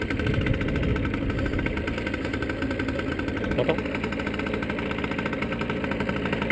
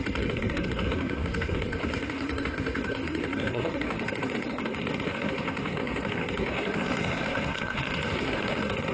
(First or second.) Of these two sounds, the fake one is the second